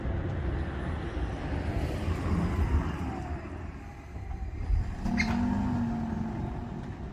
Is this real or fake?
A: real